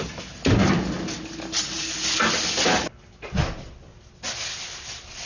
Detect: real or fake real